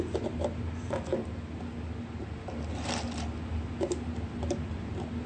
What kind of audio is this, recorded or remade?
recorded